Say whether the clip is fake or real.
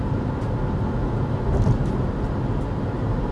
real